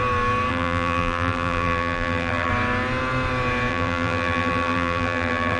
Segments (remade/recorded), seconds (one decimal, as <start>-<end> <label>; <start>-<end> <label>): 0.0-0.5 recorded; 0.5-2.5 remade; 2.5-3.7 recorded; 3.7-5.6 remade